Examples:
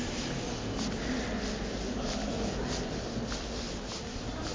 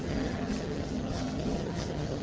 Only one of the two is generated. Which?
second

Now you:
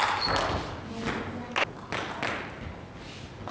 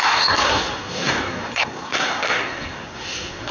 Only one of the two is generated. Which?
second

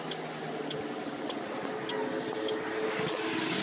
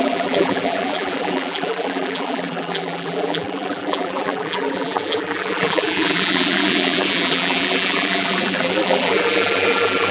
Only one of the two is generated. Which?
second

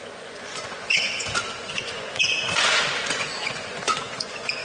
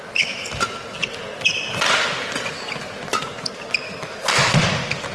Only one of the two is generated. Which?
first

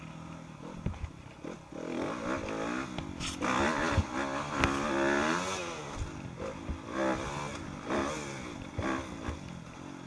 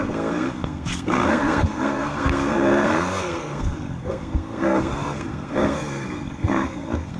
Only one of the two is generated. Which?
second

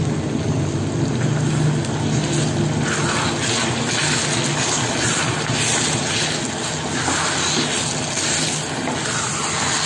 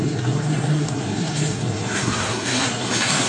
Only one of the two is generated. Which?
second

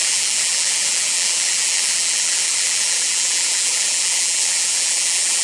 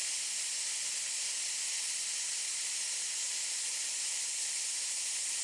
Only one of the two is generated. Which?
first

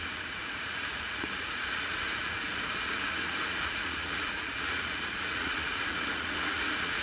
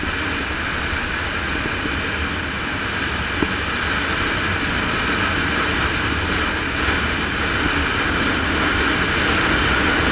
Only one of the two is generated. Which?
first